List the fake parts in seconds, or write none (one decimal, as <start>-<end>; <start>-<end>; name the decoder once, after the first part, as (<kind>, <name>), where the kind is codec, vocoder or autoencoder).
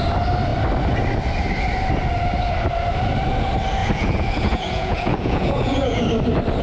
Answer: 3.8-6.0 (vocoder, Vocos)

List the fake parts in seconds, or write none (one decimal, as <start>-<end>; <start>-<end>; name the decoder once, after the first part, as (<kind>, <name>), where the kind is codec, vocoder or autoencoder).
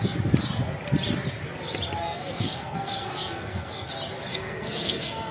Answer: 2.0-3.9 (codec, SNAC); 4.3-5.3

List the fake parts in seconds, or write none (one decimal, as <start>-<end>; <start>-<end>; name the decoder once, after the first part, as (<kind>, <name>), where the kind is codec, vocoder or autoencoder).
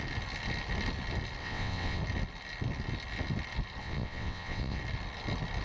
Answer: 1.4-2.0 (vocoder, WaveNeXt); 3.8-4.8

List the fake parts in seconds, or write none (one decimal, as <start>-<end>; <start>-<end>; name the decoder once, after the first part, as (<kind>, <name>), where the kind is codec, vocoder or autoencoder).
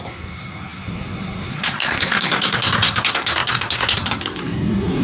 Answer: 0.0-5.0 (codec, SNAC)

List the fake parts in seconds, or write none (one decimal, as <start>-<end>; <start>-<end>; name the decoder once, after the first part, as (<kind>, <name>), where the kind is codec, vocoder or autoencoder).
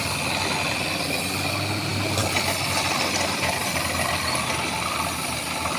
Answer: none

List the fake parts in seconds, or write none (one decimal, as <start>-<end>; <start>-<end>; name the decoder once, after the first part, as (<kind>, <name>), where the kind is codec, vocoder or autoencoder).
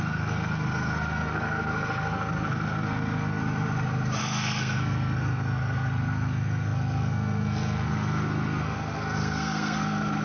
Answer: 0.0-3.4 (codec, SNAC); 4.2-10.2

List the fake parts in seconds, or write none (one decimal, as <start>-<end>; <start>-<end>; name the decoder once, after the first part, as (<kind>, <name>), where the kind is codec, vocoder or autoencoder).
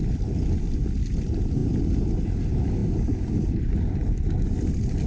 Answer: none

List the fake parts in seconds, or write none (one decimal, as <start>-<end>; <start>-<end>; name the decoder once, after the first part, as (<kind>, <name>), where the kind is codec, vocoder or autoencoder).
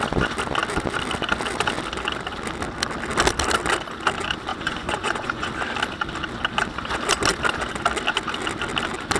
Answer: 4.5-5.5 (vocoder, Vocos)